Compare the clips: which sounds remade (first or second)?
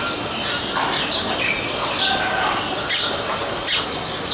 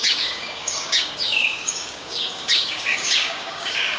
second